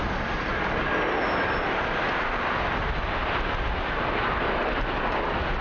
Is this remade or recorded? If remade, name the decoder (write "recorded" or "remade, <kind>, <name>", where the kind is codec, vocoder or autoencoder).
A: recorded